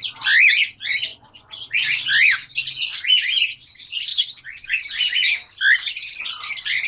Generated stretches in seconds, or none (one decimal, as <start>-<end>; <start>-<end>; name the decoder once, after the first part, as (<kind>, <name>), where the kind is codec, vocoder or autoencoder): 1.1-1.7 (vocoder, Vocos); 4.1-4.8